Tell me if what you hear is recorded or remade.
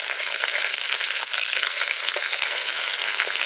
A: remade